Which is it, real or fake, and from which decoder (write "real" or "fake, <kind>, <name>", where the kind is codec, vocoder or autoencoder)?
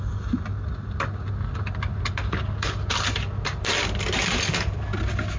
real